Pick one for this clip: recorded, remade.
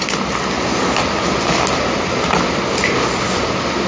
recorded